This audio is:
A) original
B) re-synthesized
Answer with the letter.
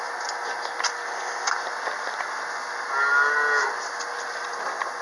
A